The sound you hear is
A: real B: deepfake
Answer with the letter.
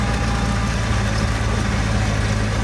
A